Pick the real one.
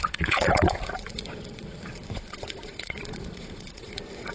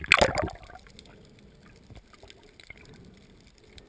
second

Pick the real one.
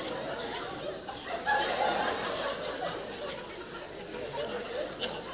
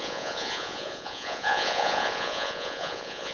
first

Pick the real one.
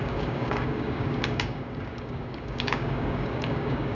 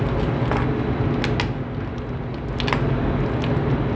second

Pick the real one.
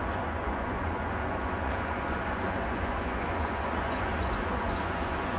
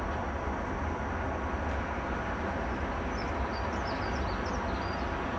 second